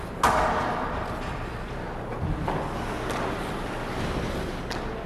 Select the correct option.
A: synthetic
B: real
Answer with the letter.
B